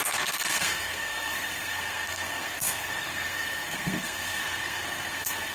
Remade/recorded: remade